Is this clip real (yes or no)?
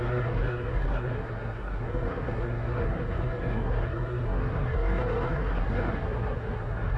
no